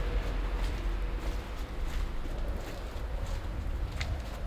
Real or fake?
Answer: real